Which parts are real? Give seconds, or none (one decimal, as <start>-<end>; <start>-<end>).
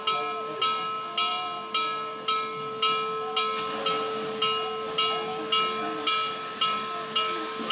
0.0-7.7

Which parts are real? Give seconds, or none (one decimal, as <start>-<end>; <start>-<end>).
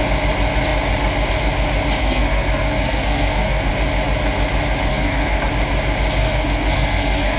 0.0-2.0; 3.7-4.9; 5.5-6.2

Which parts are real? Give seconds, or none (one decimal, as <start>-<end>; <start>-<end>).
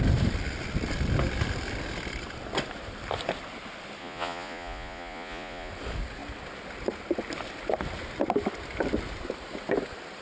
0.0-4.0; 5.7-10.2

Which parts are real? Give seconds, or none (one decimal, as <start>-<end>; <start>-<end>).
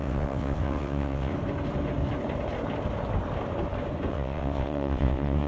1.3-4.1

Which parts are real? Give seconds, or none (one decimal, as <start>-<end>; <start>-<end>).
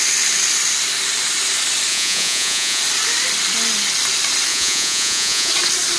0.0-1.9; 2.8-4.5; 5.5-6.0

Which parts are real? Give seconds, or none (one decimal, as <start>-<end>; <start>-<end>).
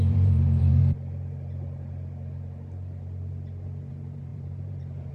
0.8-3.9